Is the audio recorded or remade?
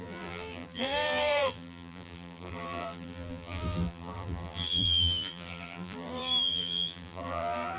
remade